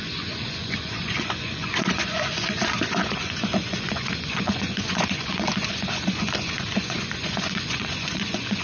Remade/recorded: remade